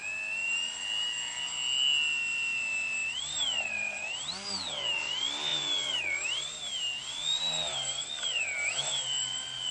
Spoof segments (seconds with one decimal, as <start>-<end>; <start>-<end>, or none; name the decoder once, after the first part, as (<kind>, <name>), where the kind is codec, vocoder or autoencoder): none